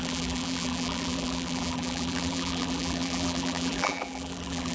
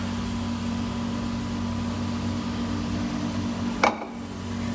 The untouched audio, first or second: second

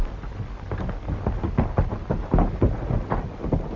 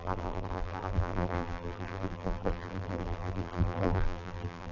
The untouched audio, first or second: first